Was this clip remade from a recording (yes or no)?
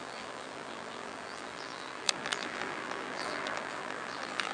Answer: yes